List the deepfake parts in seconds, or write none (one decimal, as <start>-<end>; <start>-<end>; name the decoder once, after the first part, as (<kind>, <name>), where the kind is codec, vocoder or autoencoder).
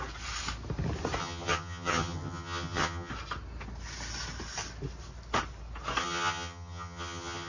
1.2-3.1 (vocoder, HiFi-GAN); 6.0-7.5